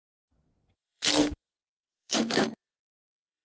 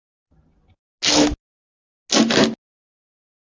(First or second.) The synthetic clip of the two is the first